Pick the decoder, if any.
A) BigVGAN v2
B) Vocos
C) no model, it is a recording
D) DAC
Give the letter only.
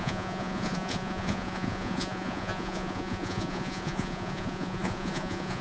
B